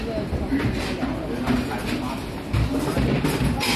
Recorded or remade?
recorded